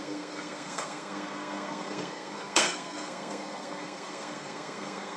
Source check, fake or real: fake